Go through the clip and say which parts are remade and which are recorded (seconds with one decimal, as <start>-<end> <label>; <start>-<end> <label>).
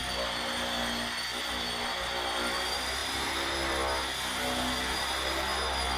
0.0-3.0 recorded; 3.0-3.7 remade; 3.7-6.0 recorded